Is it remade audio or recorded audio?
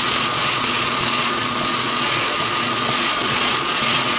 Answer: remade